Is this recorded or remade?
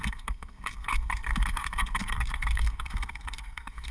remade